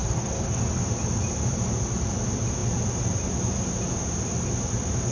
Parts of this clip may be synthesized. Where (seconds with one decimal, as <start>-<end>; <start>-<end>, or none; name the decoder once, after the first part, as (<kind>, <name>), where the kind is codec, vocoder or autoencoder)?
0.0-0.6 (codec, SNAC)